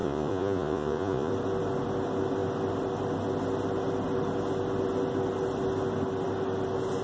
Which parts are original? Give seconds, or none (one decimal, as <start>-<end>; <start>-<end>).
1.3-7.0